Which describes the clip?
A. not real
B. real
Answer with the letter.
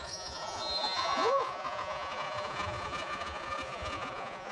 A